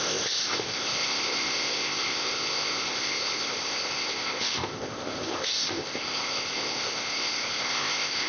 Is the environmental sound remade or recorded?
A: remade